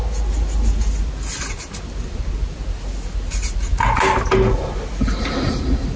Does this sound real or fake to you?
real